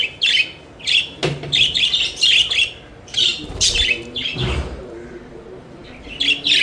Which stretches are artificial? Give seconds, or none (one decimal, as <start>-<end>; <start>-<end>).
none